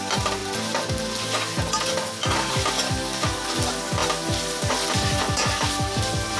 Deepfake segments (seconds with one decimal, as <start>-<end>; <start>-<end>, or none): none